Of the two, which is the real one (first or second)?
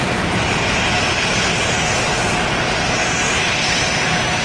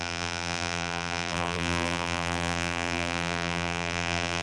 first